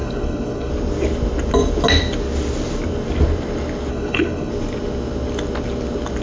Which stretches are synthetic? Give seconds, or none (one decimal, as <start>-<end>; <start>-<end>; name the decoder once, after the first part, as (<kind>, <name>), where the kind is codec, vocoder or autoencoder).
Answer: 0.0-0.7 (codec, HILCodec); 3.9-4.5